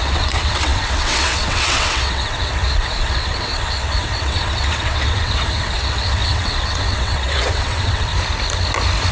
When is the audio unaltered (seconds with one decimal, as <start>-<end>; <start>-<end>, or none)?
8.1-9.1